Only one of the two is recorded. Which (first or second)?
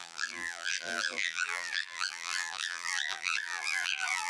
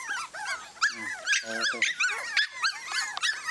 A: second